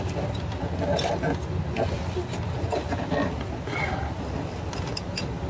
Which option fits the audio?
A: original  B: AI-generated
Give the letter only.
A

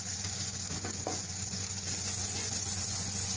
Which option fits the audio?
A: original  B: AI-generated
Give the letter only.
B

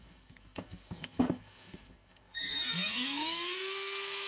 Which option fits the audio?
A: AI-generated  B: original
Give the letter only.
A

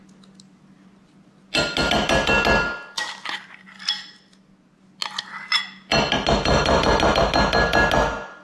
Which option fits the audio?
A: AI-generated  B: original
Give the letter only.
B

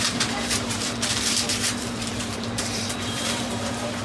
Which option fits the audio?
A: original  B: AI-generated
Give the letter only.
B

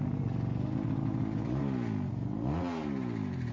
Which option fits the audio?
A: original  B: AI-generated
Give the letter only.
A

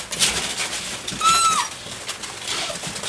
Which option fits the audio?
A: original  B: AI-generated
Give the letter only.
A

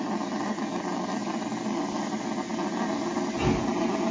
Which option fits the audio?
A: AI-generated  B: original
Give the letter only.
B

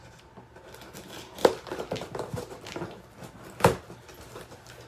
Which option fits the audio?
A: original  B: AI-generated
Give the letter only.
A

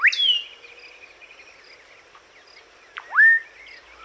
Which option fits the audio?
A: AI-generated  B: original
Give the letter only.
B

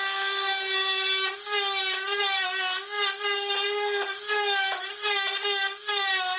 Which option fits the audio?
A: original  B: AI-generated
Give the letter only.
A